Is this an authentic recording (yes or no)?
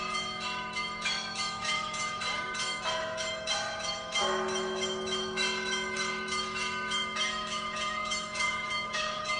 no